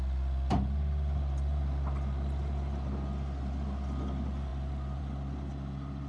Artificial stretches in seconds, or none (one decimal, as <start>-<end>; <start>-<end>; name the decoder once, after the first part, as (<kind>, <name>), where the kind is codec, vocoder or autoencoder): none